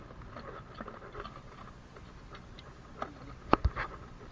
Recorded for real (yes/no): yes